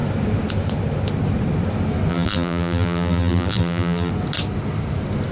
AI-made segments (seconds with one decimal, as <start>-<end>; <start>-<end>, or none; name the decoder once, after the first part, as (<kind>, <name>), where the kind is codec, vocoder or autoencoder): 2.1-4.1 (vocoder, BigVGAN v2)